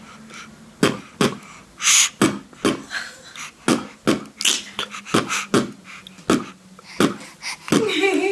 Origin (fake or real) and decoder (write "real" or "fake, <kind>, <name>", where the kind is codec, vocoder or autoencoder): real